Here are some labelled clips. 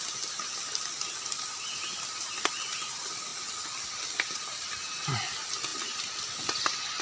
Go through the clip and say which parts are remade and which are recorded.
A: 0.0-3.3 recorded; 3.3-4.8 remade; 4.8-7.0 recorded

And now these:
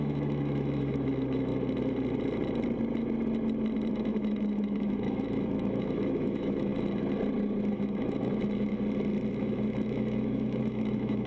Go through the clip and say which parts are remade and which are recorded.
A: 0.0-1.5 remade; 1.5-3.9 recorded; 3.9-6.7 remade; 6.7-7.7 recorded; 7.7-8.7 remade; 8.7-9.3 recorded; 9.3-11.3 remade

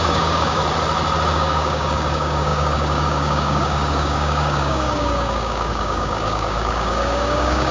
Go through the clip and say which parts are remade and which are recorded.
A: 0.0-0.6 remade; 0.6-1.3 recorded; 1.3-7.7 remade

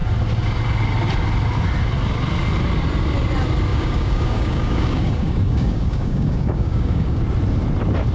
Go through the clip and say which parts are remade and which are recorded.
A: 0.0-3.7 recorded; 3.7-7.2 remade; 7.2-8.1 recorded

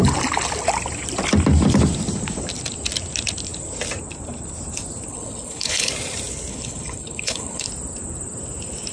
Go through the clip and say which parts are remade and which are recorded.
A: 0.0-5.1 recorded; 5.1-5.9 remade; 5.9-6.5 recorded; 6.5-7.7 remade; 7.7-8.9 recorded